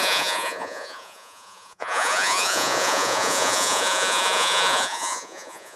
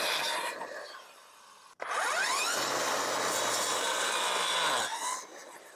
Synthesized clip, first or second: first